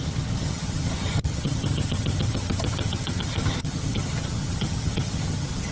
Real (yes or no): no